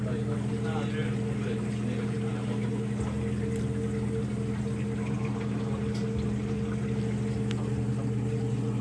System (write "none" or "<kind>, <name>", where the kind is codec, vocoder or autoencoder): none